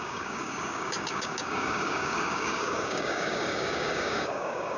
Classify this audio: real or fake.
fake